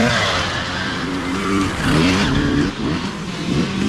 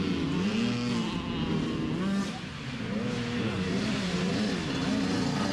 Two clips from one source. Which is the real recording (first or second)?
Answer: second